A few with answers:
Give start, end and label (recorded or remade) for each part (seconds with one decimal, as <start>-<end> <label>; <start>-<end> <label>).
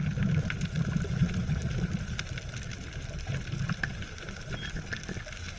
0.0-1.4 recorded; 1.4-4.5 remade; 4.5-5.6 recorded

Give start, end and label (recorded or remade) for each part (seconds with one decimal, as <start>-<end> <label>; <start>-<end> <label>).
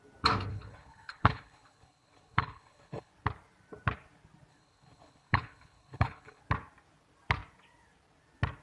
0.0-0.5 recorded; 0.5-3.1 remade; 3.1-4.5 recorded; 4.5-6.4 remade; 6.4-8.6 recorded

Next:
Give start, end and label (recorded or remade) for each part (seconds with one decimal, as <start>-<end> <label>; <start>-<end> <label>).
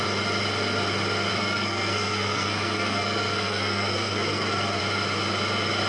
0.0-1.3 recorded; 1.3-4.8 remade; 4.8-5.9 recorded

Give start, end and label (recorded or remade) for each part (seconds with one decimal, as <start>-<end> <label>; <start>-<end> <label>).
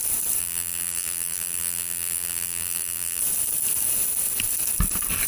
0.0-0.4 recorded; 0.4-3.2 remade; 3.2-5.3 recorded